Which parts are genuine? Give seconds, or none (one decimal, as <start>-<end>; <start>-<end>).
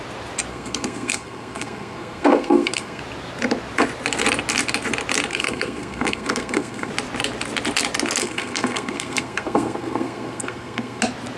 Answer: 0.0-0.5; 3.0-5.3; 6.9-8.2; 11.0-11.4